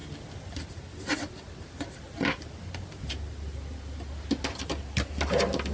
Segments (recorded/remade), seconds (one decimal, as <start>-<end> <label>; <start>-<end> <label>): 0.0-5.7 recorded